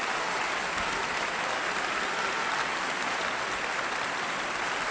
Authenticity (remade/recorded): recorded